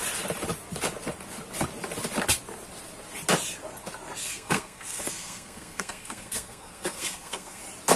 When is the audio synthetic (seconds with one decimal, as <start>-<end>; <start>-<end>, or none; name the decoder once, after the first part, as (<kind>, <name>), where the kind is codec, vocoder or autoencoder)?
4.2-7.6 (codec, SNAC)